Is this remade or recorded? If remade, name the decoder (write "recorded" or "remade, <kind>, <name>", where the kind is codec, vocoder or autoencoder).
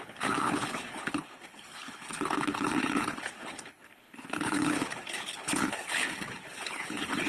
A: remade, codec, HILCodec